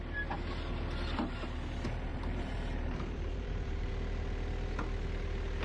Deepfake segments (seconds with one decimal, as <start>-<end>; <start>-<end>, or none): 2.1-3.9